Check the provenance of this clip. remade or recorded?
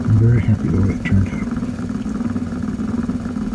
recorded